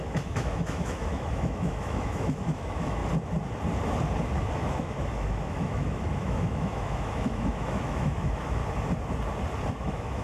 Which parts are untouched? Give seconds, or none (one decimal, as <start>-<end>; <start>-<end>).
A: 3.0-4.5; 8.6-9.7